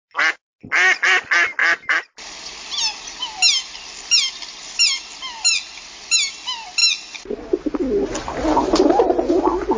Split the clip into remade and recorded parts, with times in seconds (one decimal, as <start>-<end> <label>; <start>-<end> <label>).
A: 0.0-9.8 recorded

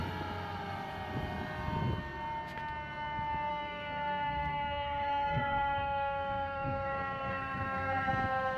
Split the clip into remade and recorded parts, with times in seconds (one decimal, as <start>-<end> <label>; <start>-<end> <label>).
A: 0.0-3.5 recorded; 3.5-8.1 remade; 8.1-8.6 recorded

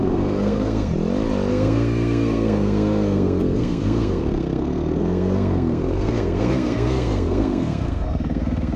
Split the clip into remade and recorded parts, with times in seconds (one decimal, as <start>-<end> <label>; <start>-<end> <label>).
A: 0.0-0.9 remade; 0.9-1.5 recorded; 1.5-8.8 remade

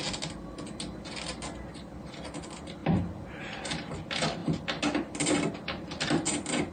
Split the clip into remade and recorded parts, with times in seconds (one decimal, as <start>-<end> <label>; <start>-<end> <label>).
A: 0.0-6.7 recorded

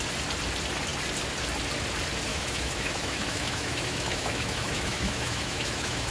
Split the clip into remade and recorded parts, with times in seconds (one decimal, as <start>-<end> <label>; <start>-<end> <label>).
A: 0.0-2.3 recorded; 2.3-6.1 remade

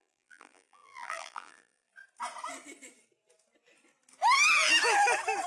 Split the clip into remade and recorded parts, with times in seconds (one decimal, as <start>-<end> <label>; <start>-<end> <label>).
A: 0.0-1.9 remade; 1.9-5.5 recorded

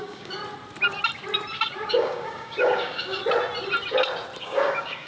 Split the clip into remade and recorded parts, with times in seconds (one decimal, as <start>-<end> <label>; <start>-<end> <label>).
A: 0.0-0.4 remade; 0.4-1.9 recorded; 1.9-3.2 remade; 3.2-4.4 recorded; 4.4-5.1 remade